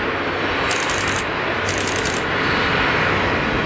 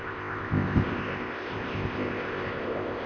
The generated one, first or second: second